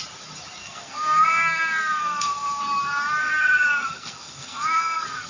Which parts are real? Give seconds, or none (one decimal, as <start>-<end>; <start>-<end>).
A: 0.0-0.6; 2.6-3.2